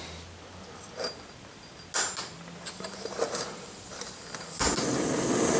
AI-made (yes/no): no